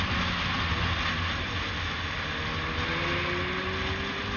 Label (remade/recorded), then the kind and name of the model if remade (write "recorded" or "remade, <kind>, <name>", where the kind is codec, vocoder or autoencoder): recorded